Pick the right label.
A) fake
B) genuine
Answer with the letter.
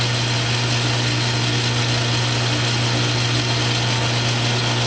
B